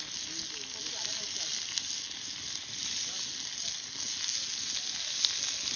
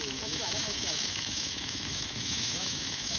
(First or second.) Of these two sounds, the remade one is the second